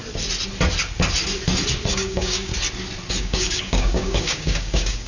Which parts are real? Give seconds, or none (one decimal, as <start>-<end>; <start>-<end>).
0.0-1.9; 2.5-3.2